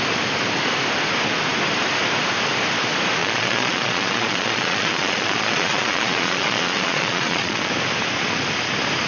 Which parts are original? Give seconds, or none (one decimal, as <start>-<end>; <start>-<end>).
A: 0.0-3.2; 7.7-9.1